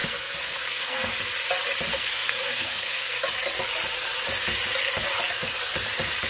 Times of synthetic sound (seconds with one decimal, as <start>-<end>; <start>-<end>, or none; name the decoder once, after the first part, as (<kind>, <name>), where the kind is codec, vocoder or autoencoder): 0.0-1.1 (codec, SNAC); 1.9-3.2